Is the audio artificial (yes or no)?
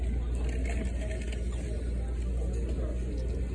no